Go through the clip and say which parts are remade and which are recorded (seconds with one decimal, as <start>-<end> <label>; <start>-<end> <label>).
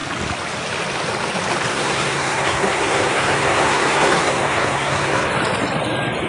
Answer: 0.0-1.7 recorded; 1.7-5.3 remade; 5.3-6.3 recorded